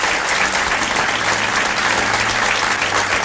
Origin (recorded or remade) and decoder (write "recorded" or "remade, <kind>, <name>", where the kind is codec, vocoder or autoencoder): recorded